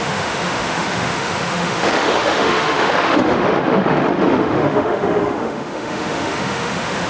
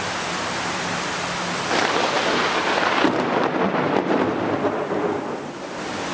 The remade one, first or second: first